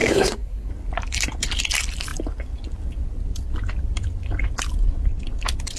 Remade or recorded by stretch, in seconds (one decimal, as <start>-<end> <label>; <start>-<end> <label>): 0.0-0.7 remade; 0.7-5.8 recorded